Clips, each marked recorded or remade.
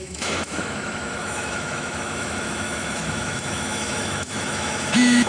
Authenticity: remade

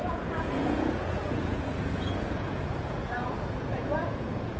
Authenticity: remade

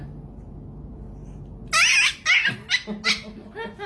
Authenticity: recorded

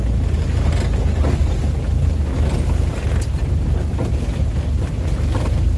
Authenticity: recorded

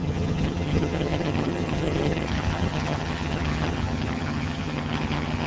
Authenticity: remade